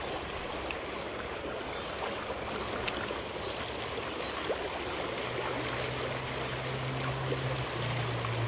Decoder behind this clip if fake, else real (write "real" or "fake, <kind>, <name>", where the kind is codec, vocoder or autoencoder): real